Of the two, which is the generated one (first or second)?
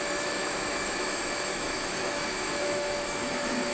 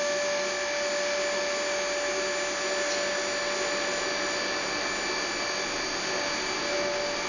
first